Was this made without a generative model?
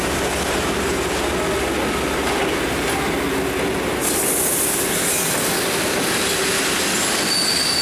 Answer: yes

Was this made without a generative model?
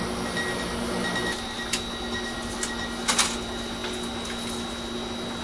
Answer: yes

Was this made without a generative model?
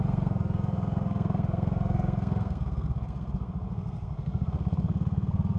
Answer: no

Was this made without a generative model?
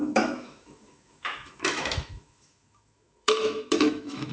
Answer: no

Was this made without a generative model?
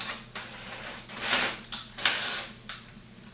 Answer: yes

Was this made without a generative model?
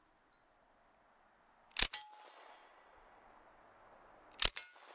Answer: yes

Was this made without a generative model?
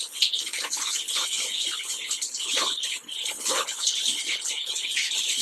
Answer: no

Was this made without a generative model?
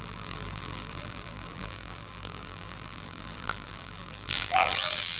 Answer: no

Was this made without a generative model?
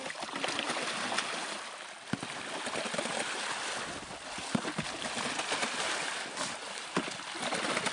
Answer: yes